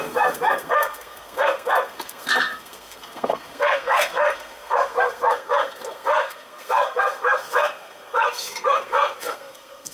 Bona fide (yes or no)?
no